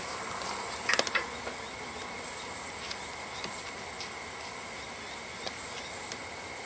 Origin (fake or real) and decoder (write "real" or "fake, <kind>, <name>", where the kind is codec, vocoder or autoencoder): real